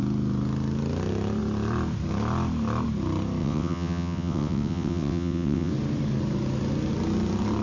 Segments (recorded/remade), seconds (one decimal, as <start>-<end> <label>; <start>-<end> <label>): 0.0-3.4 recorded; 3.4-5.7 remade; 5.7-7.6 recorded